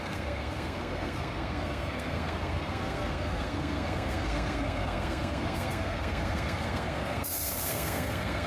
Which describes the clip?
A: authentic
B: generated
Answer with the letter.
B